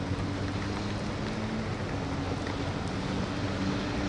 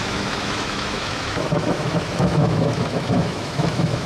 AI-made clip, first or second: second